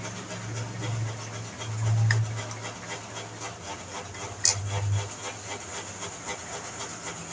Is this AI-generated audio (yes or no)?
no